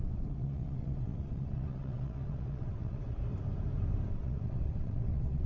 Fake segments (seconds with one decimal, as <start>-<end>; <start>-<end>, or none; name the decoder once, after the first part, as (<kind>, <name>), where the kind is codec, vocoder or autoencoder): 0.0-3.2 (vocoder, WaveNeXt); 4.1-5.5